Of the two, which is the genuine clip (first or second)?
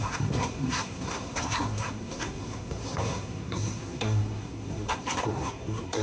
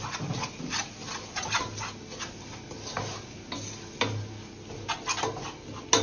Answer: second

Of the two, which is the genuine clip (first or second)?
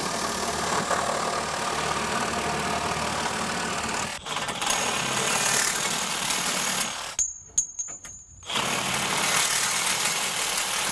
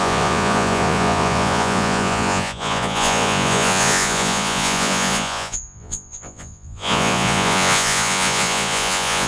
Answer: first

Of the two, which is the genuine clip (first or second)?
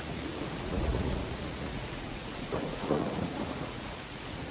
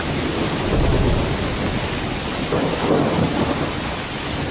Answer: second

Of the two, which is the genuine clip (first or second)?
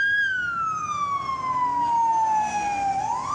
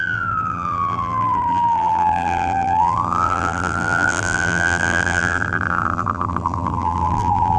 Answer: first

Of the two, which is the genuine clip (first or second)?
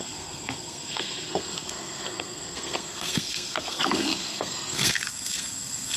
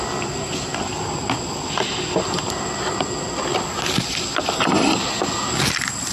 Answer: second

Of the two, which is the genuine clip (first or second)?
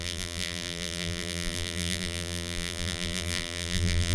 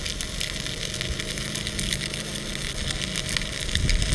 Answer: second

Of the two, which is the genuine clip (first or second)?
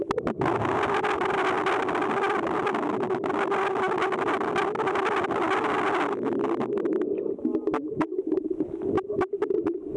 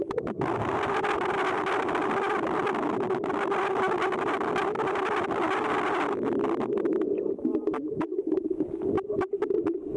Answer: first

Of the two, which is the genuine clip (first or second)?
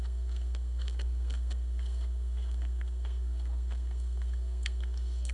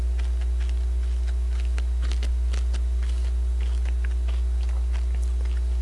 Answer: second